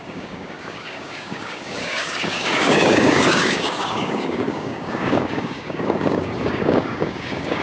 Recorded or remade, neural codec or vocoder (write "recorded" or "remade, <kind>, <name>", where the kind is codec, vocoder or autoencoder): remade, codec, DAC